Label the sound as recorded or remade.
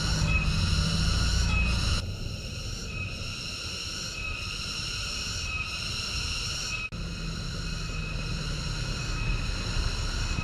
recorded